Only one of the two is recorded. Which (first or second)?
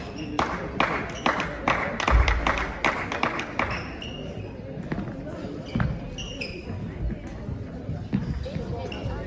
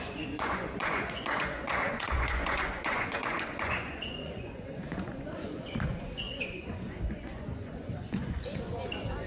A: first